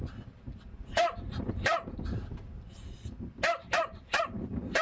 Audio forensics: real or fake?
real